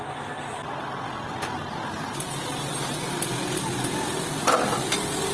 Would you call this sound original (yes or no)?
yes